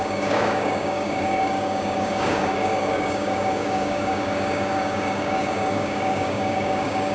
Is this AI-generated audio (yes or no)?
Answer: yes